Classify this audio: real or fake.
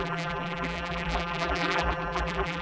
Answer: fake